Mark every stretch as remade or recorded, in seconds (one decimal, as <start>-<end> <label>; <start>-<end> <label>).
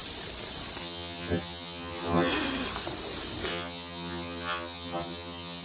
0.0-0.8 recorded; 0.8-2.3 remade; 2.3-3.5 recorded; 3.5-5.6 remade